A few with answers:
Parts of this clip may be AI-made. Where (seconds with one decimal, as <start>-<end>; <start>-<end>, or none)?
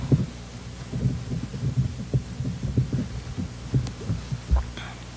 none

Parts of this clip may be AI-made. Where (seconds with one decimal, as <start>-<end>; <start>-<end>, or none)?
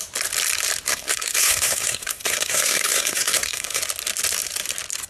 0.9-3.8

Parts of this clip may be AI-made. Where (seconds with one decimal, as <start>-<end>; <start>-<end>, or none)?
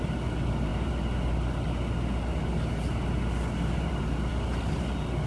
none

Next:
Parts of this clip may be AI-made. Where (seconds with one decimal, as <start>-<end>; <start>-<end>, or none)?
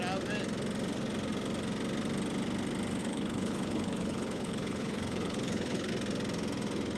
3.0-5.9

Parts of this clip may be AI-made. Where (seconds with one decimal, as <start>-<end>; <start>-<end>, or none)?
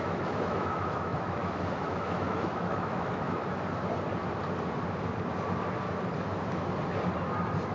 0.0-3.4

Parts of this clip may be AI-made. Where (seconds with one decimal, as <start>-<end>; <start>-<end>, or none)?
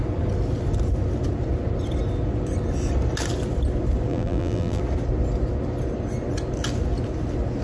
4.1-4.8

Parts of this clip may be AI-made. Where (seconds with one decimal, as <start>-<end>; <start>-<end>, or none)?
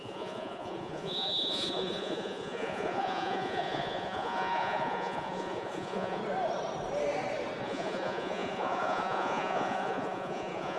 0.0-6.2; 7.6-10.8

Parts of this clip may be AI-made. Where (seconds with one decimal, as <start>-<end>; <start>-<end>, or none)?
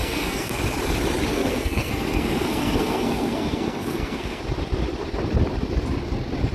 0.0-0.6; 1.3-4.4